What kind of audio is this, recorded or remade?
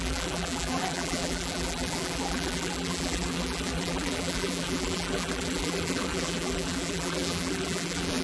remade